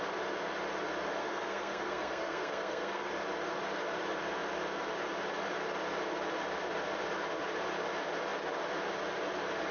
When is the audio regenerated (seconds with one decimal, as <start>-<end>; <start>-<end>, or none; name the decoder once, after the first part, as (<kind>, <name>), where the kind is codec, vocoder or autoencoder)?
1.2-3.1 (codec, SNAC)